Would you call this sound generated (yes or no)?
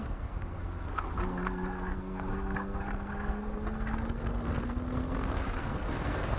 yes